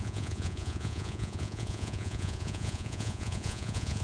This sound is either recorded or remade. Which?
remade